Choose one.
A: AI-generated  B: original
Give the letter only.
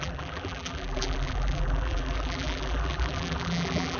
A